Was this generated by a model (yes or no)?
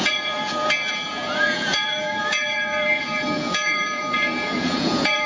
yes